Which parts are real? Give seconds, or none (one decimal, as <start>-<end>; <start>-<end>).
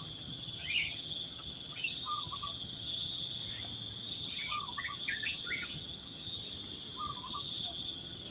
3.4-4.1; 6.4-7.2